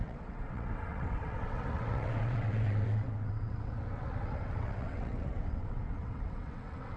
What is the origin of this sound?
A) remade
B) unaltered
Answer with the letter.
A